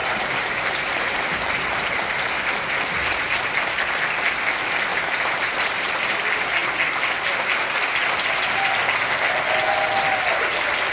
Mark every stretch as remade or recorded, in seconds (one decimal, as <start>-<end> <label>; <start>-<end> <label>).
0.0-1.1 remade; 1.1-4.9 recorded; 4.9-5.9 remade; 5.9-10.9 recorded

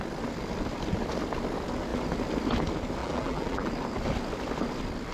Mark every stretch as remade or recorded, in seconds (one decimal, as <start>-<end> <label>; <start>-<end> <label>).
0.0-3.0 recorded; 3.0-3.7 remade; 3.7-5.1 recorded